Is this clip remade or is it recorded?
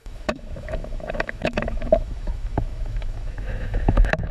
remade